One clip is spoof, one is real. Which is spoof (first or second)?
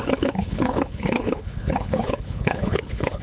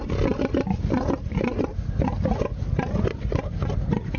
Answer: first